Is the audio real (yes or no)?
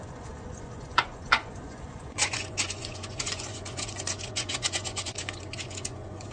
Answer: no